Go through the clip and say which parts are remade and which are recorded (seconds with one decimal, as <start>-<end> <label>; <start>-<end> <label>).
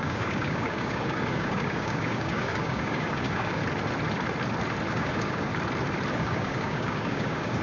0.0-3.6 remade; 3.6-4.9 recorded; 4.9-5.5 remade; 5.5-6.1 recorded; 6.1-7.6 remade